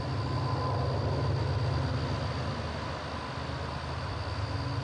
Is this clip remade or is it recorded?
recorded